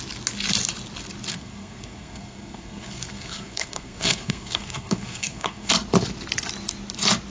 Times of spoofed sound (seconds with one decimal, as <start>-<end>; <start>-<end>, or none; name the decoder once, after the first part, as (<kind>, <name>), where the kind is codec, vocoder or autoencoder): 1.3-5.7 (codec, SNAC)